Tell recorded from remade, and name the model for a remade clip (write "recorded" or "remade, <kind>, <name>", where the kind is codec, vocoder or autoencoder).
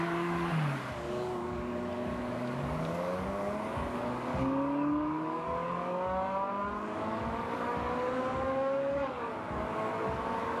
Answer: remade, codec, DAC